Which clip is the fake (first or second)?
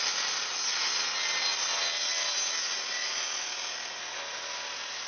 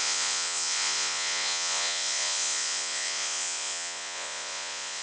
second